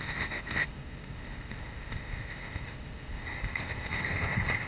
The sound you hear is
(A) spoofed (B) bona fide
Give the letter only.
A